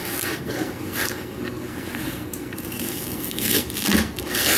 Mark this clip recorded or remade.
remade